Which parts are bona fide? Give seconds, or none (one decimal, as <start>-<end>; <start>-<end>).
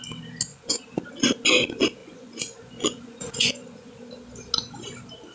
0.0-0.5; 1.1-2.0; 4.0-5.3